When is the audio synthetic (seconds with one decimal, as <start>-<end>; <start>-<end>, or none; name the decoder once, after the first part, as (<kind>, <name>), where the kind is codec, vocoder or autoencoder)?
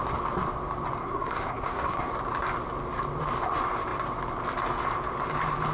1.0-2.1 (codec, SNAC)